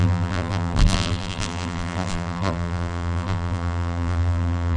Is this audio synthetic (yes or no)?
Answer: yes